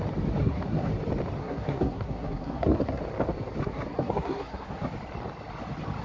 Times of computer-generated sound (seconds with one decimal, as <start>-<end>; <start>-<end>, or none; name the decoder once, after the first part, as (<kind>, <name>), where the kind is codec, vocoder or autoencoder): 0.4-0.9 (codec, SNAC); 1.4-3.0; 3.6-4.9